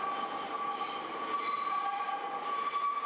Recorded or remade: recorded